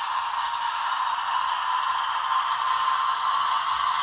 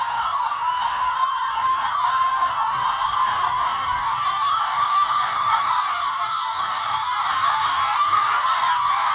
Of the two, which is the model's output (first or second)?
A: second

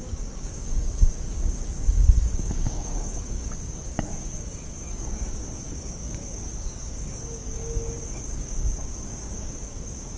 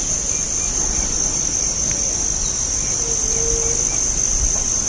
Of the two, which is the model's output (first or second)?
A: first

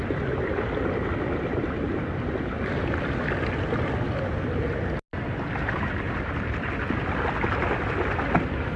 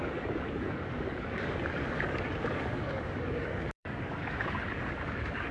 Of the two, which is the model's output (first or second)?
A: second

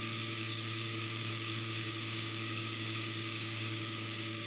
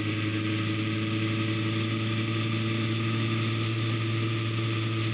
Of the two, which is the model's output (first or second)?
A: first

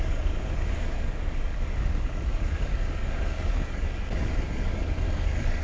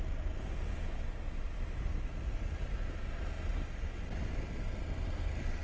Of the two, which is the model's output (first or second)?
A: first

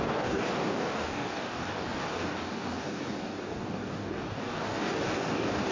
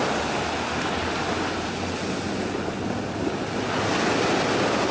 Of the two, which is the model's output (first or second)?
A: first